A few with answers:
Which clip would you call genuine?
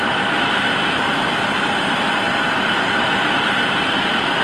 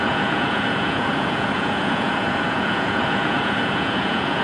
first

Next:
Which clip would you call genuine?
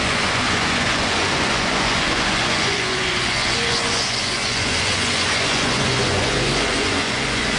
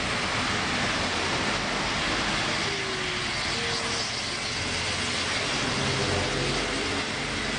second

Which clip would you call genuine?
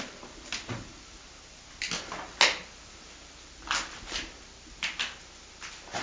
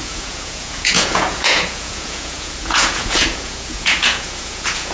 first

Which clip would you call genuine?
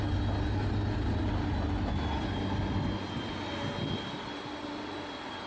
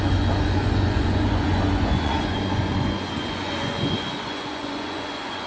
first